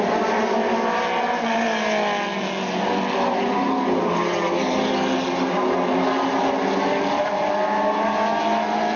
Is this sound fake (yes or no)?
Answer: no